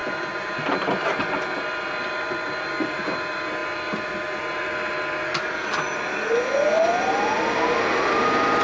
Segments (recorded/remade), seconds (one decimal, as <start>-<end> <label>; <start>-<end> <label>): 0.0-8.6 recorded